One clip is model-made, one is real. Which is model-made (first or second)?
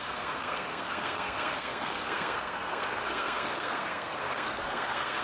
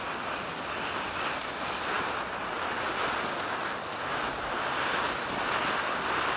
first